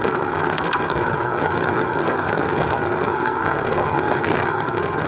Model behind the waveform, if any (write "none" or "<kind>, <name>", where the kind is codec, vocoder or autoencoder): codec, SNAC